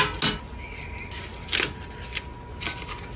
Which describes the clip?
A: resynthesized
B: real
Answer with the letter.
B